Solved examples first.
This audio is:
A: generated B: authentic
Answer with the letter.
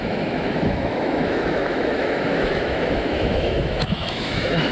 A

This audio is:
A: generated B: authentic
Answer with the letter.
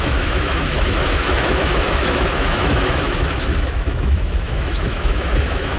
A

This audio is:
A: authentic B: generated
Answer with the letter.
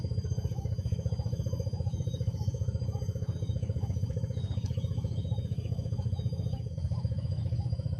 B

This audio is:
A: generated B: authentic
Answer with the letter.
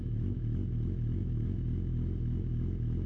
A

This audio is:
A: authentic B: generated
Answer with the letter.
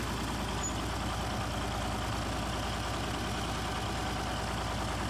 A